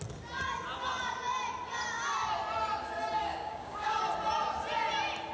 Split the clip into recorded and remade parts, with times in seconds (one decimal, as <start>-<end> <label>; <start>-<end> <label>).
0.0-3.2 recorded; 3.2-4.0 remade; 4.0-5.3 recorded